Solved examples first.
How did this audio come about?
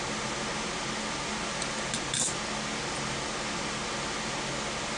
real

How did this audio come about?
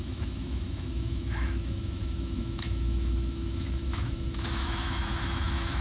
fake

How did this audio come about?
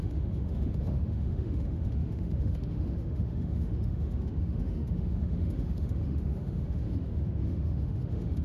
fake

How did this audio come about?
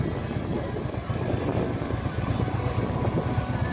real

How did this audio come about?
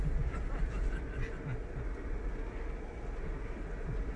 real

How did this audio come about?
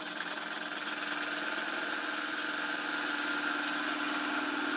real